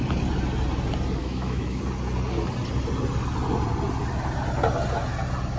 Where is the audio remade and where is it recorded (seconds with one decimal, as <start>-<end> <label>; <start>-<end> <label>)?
0.0-1.2 recorded; 1.2-1.8 remade; 1.8-5.6 recorded